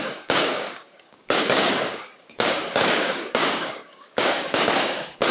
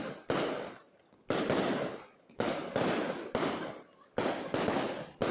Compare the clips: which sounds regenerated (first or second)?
first